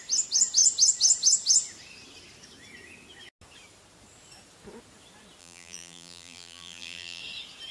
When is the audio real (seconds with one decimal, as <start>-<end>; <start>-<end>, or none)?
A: 0.0-5.4; 7.2-7.7